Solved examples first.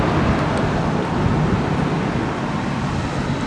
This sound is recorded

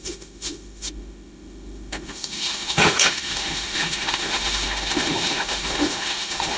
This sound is remade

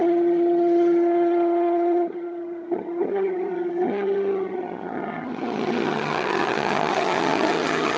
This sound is remade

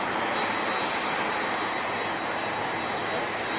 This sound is recorded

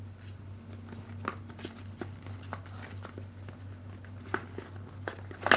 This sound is recorded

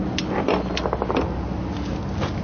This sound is recorded